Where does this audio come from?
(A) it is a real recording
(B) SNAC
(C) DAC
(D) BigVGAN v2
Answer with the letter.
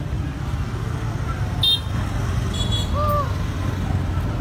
A